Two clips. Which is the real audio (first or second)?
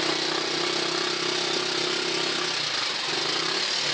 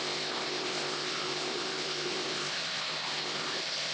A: first